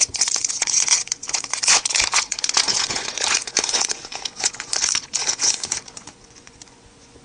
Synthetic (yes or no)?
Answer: yes